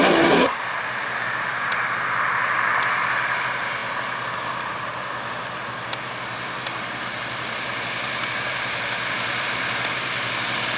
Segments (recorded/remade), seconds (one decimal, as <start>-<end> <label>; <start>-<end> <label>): 0.0-0.6 remade; 0.6-10.8 recorded